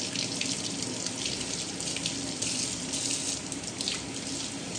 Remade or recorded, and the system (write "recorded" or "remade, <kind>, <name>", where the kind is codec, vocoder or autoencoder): recorded